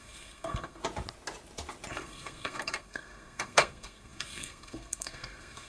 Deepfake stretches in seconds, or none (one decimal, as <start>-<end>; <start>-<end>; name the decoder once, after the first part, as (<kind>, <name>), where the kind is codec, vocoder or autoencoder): 0.0-0.8 (codec, SNAC); 1.9-5.7